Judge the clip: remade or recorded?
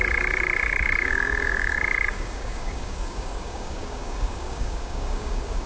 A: remade